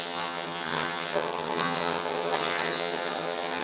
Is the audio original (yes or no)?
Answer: no